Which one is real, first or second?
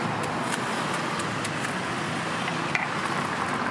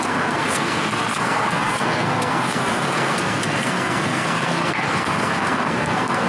first